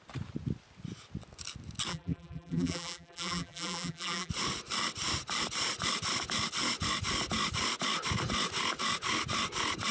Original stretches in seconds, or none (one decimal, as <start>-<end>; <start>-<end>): 0.0-1.9; 4.3-9.9